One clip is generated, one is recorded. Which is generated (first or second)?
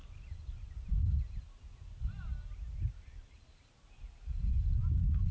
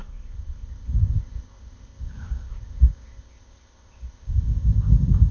second